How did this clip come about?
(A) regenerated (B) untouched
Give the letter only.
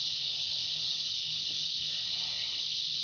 A